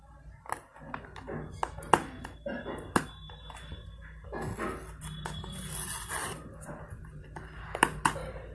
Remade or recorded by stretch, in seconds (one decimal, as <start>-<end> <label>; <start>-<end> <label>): 0.0-6.2 recorded; 6.2-6.8 remade; 6.8-8.5 recorded